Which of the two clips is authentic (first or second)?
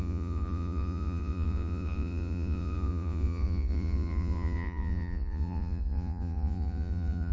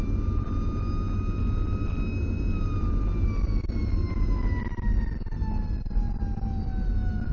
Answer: second